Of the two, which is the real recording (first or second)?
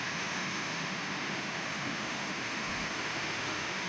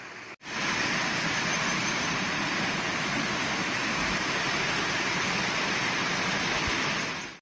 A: second